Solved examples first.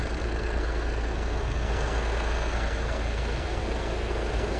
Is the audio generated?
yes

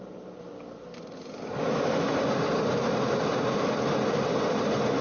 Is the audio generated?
no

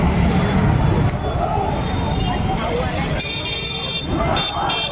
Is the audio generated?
yes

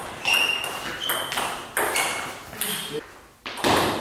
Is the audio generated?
no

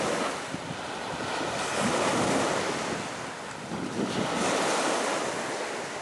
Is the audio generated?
no